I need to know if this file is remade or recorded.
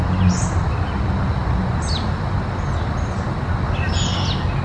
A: recorded